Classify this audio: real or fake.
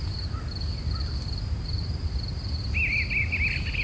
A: real